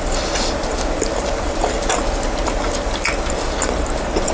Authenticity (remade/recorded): recorded